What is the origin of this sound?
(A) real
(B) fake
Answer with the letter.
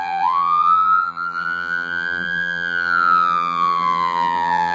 B